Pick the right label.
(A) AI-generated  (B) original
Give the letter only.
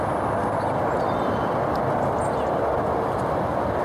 B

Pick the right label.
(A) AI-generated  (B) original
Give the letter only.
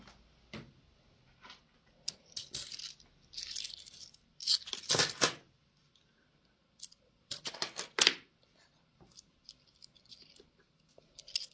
B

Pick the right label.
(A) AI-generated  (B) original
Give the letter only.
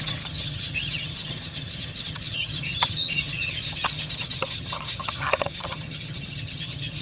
A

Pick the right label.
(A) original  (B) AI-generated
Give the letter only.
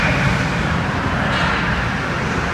A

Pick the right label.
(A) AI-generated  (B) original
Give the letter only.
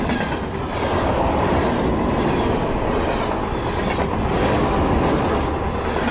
B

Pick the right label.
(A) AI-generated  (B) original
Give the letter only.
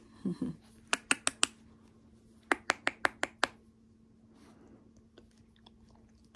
B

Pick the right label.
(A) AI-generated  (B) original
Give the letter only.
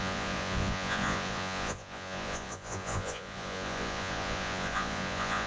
A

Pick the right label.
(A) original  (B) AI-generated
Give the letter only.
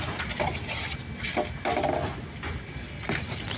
A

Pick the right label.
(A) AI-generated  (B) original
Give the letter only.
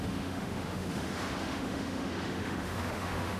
A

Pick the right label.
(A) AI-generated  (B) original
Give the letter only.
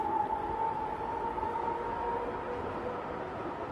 B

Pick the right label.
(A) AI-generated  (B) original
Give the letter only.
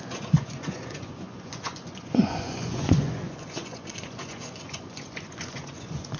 A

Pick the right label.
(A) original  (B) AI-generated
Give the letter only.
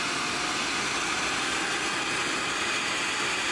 A